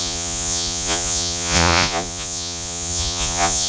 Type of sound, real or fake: fake